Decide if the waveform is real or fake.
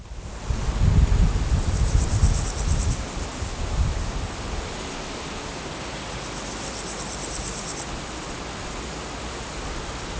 real